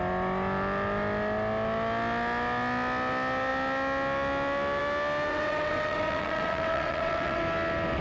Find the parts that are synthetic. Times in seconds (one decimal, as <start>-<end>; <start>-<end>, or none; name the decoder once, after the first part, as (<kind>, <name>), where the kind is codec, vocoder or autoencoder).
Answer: 5.3-7.4 (vocoder, WaveNeXt)